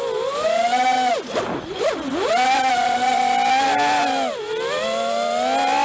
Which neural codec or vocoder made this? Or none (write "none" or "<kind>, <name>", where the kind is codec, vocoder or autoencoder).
none